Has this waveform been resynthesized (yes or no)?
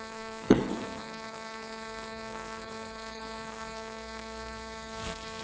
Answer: yes